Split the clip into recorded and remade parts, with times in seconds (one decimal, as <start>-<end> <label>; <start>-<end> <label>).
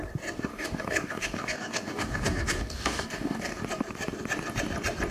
0.0-0.5 recorded; 0.5-3.6 remade; 3.6-5.1 recorded